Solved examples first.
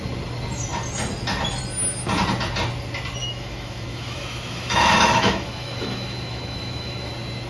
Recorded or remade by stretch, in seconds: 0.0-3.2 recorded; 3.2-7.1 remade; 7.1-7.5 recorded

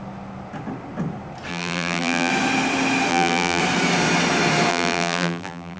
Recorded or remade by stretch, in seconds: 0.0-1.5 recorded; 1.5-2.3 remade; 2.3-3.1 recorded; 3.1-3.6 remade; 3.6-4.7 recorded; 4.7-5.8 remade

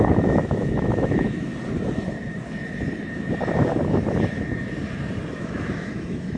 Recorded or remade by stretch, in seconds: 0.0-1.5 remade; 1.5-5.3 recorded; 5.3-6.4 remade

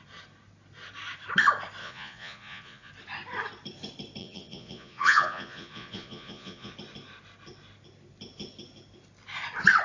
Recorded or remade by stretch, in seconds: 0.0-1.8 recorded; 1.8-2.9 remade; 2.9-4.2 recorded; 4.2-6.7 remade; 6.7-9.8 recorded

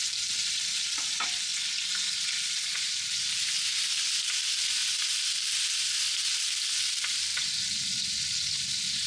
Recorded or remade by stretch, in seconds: 0.0-9.1 recorded